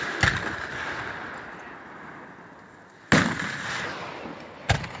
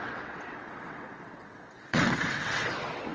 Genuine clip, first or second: first